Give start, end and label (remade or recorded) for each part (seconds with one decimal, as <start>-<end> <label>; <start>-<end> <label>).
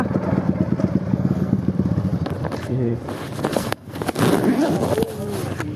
0.0-1.1 recorded; 1.1-1.6 remade; 1.6-3.5 recorded; 3.5-4.2 remade; 4.2-5.8 recorded